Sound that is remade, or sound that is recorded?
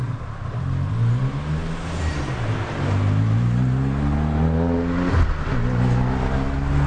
recorded